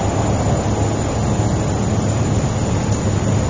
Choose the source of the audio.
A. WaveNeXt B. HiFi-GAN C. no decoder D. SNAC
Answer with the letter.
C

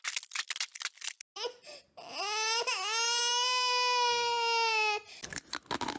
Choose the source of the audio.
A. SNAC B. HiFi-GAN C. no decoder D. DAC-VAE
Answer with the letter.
C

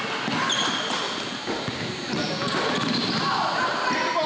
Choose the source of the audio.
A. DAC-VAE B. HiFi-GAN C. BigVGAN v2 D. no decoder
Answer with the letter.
D